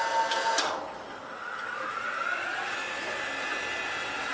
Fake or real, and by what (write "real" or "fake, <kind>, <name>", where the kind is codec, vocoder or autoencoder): real